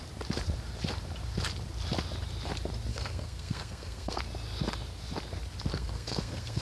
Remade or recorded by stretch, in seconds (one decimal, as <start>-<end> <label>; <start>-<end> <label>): 0.0-2.9 recorded; 2.9-4.2 remade; 4.2-5.7 recorded; 5.7-6.6 remade